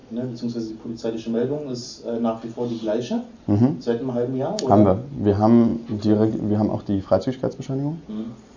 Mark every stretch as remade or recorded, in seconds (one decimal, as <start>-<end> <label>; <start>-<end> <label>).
0.0-0.7 remade; 0.7-8.6 recorded